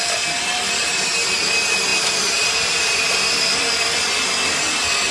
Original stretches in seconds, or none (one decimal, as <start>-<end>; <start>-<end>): 0.0-1.9